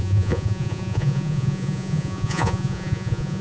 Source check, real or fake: fake